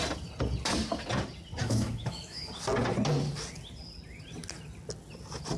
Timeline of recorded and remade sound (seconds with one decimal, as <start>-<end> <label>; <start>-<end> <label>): 0.0-1.6 recorded; 1.6-2.5 remade; 2.5-5.6 recorded